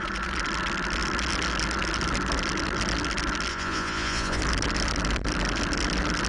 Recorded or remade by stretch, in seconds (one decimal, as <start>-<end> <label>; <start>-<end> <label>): 0.0-3.5 recorded; 3.5-4.4 remade; 4.4-6.3 recorded